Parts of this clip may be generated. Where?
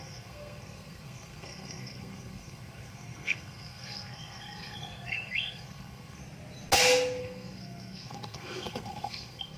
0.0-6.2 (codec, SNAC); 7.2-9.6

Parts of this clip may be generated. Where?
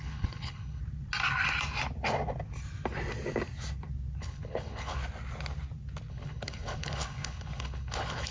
0.0-0.8 (codec, HILCodec); 4.2-5.0; 6.1-8.3